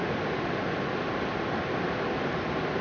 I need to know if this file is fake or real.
real